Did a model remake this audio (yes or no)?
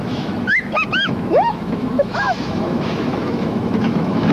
yes